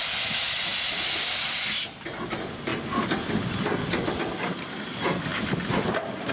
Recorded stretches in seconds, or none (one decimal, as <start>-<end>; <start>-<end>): 0.0-6.3